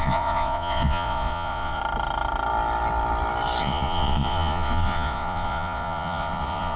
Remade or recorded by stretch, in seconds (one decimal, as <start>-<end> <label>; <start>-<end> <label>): 0.0-1.8 remade; 1.8-3.6 recorded; 3.6-6.8 remade